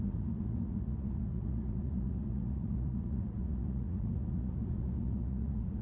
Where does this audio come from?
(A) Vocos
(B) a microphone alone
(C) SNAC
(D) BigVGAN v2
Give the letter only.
A